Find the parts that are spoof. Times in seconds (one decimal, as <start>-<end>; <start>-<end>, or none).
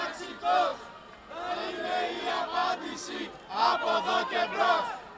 none